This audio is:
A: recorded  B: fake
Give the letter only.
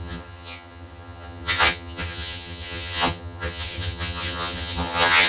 B